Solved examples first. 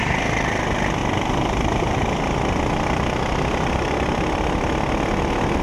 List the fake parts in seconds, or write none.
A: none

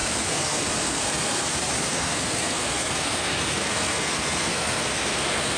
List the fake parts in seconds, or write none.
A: 0.0-1.5; 1.9-5.6

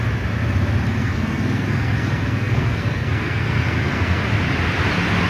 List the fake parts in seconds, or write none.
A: 1.0-4.2

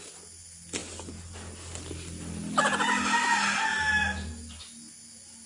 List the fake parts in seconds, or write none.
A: none

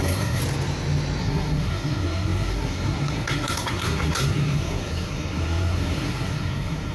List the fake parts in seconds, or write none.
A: 0.0-0.4; 1.2-6.9

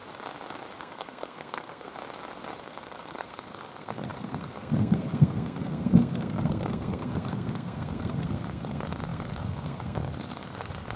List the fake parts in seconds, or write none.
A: 0.8-1.9; 2.6-11.0